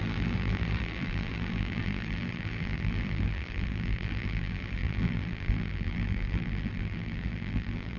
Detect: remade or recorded remade